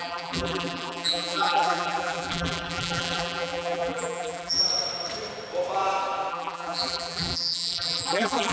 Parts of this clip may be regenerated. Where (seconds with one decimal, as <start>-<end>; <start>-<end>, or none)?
0.0-4.6; 6.3-8.5